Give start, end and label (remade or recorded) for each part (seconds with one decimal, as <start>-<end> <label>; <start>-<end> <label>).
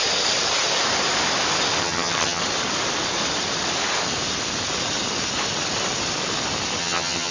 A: 0.0-1.8 recorded; 1.8-2.4 remade; 2.4-6.8 recorded; 6.8-7.3 remade